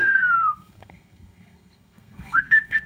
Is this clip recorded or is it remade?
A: remade